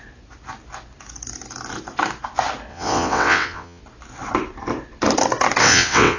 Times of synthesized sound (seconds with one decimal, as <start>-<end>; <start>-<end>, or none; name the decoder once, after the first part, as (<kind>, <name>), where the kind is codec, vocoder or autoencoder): 2.7-3.8 (vocoder, WaveNeXt); 5.6-6.2

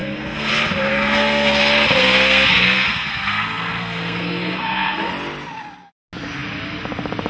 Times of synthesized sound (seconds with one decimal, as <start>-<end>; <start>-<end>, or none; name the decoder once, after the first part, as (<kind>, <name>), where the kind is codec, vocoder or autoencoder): 0.0-0.5 (codec, SNAC); 0.9-1.6; 2.0-5.1

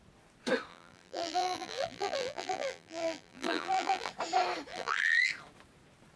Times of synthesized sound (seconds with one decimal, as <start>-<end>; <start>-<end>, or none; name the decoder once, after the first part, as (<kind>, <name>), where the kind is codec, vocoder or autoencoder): 0.7-4.1 (vocoder, BigVGAN v2); 4.7-5.3

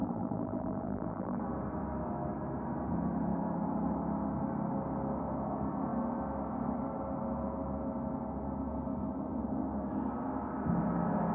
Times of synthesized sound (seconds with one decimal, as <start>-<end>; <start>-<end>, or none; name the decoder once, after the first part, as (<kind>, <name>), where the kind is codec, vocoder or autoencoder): 0.0-1.4 (vocoder, BigVGAN v2)

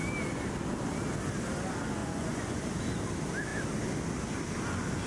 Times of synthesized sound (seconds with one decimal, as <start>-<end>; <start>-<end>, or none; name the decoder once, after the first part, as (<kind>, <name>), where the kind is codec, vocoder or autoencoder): 2.0-2.6 (vocoder, Vocos)